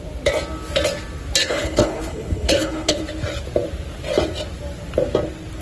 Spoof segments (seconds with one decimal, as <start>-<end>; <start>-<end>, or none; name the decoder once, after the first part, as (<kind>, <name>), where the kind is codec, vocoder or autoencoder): 1.4-3.0 (codec, HILCodec)

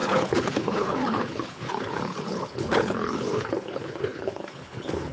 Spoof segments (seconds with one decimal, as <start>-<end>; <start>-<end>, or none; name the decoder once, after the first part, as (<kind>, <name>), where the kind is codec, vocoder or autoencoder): 0.0-5.1 (codec, HILCodec)

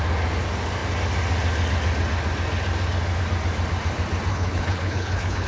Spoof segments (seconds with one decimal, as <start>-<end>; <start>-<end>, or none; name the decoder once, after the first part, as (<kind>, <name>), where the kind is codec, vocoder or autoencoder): 4.3-5.5 (codec, HILCodec)

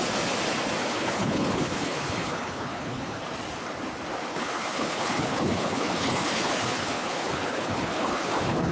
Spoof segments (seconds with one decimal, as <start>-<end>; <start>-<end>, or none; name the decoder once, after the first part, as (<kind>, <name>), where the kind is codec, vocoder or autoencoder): 0.8-3.2 (codec, HILCodec); 4.3-8.7